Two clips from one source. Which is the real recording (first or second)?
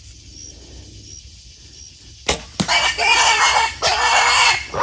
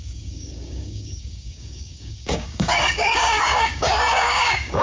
first